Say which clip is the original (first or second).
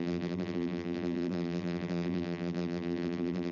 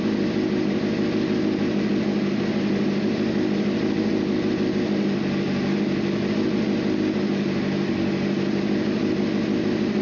second